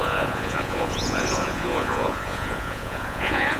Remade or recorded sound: remade